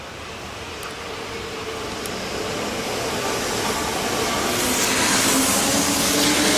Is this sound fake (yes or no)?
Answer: no